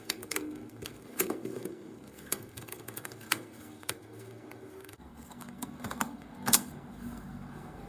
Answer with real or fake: fake